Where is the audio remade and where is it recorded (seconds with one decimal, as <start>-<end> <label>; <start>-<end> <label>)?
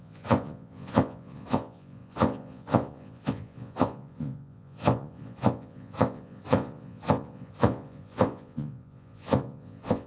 0.0-10.1 remade